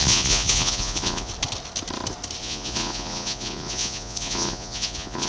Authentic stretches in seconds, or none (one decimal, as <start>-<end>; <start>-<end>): 1.3-2.4